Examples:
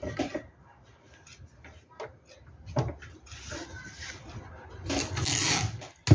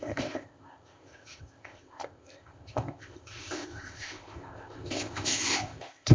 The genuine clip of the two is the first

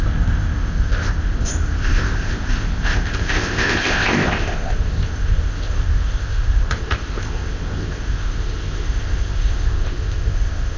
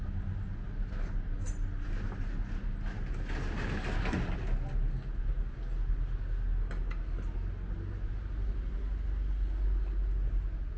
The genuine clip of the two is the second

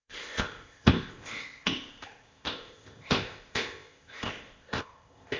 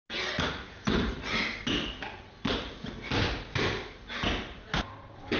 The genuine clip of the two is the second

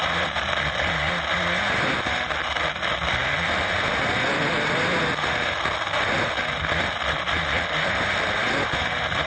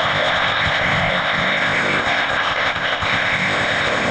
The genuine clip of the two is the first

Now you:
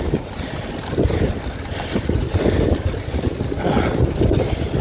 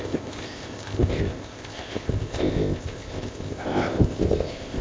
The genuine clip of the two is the first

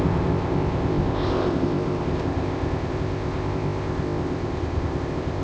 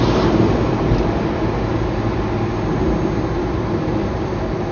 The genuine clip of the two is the second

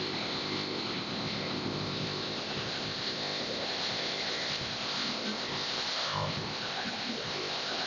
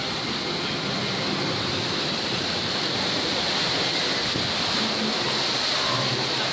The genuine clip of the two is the second